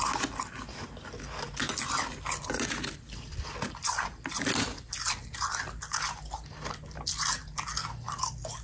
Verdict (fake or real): real